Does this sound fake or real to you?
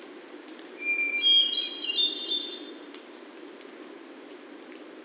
real